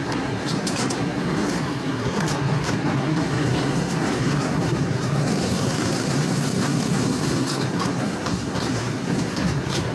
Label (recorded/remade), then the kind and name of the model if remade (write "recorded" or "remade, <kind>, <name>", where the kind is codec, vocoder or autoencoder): remade, codec, SNAC